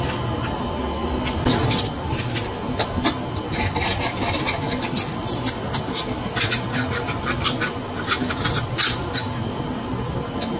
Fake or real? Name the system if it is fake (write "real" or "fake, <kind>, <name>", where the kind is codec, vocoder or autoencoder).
real